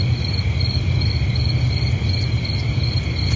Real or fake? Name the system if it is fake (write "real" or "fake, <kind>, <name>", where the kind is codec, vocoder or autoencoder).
real